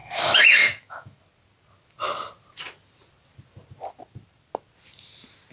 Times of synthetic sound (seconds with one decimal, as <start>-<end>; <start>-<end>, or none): 0.0-1.2